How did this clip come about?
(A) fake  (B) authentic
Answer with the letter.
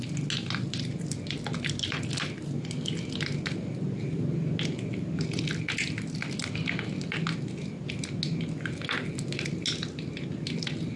B